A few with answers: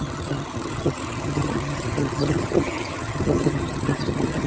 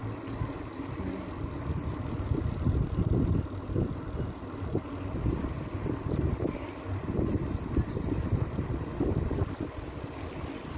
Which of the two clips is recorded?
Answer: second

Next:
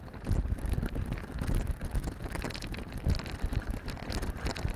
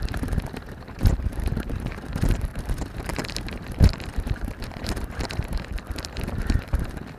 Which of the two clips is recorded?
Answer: first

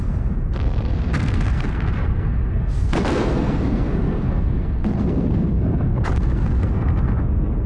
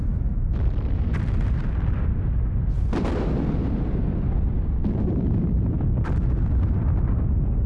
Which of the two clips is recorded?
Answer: second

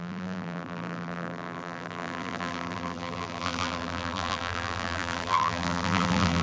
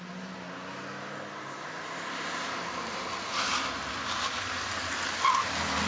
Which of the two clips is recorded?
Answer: second